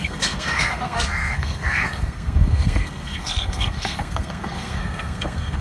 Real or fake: fake